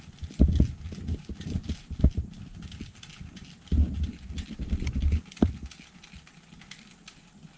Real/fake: real